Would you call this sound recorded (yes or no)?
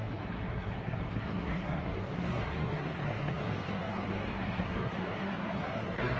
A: no